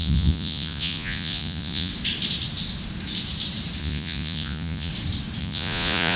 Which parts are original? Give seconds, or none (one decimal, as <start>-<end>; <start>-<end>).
1.9-3.8; 4.9-5.4